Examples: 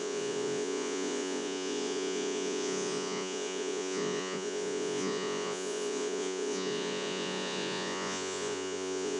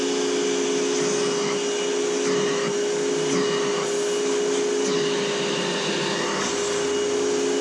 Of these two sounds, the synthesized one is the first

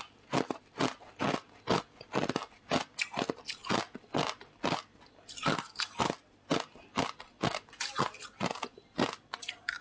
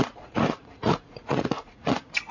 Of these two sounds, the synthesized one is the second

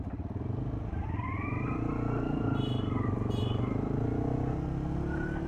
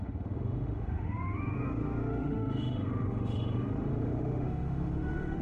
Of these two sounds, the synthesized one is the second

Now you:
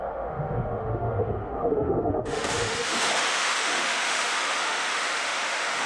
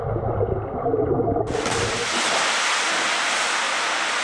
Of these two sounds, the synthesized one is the first